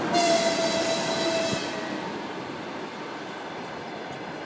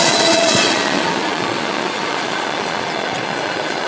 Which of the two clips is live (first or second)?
first